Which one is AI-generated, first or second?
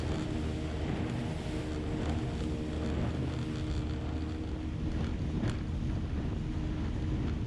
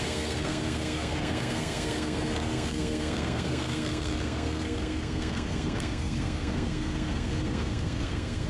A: second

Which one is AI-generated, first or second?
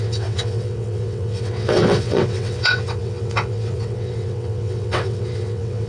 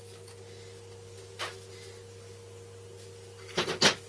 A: first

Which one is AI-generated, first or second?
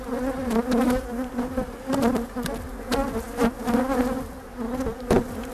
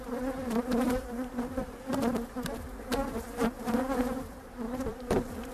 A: second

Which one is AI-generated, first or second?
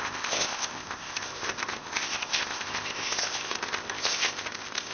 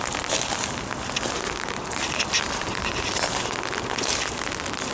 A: first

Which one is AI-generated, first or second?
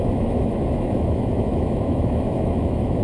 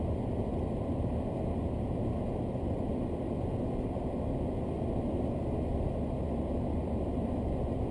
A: first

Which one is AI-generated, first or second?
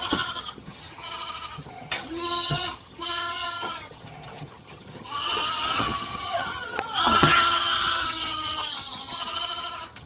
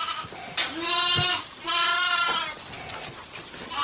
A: first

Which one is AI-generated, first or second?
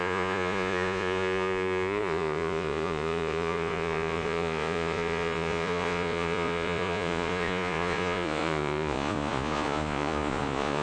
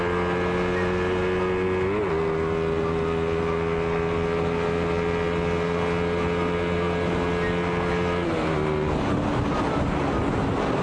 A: first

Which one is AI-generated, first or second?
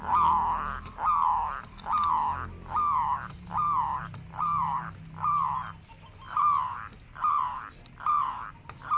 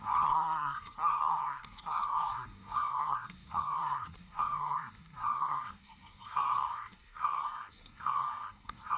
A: second